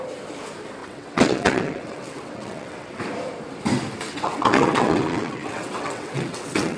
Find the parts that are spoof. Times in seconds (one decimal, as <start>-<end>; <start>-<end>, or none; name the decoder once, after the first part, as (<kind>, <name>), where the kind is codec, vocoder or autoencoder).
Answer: 0.8-3.0 (vocoder, WaveNeXt); 4.1-6.8